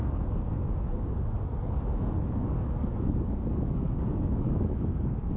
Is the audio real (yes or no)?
no